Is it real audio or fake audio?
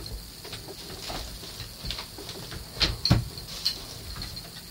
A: real